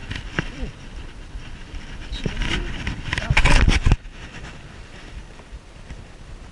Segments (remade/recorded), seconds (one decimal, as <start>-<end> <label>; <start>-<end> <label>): 0.0-6.5 remade